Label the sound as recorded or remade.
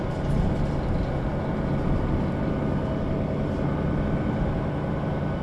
recorded